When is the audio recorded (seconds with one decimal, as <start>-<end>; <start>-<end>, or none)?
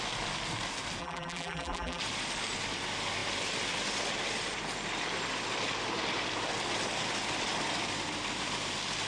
0.0-1.0; 2.0-9.1